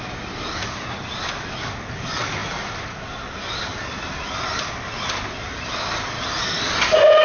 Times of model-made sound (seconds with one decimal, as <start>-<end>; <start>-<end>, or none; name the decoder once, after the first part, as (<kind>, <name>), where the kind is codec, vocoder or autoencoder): none